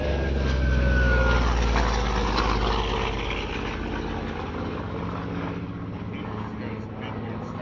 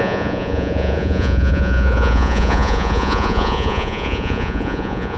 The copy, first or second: second